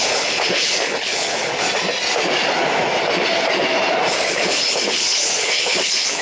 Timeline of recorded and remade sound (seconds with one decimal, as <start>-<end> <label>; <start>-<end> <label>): 0.0-1.5 remade; 1.5-4.1 recorded; 4.1-6.2 remade